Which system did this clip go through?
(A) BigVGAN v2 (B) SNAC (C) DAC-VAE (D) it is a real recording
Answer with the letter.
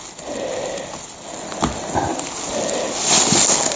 D